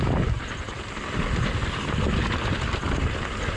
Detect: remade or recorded recorded